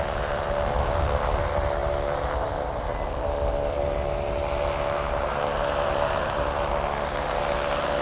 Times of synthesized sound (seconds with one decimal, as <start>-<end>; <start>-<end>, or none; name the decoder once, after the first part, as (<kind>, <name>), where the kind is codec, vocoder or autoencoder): none